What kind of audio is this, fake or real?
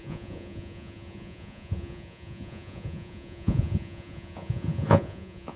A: fake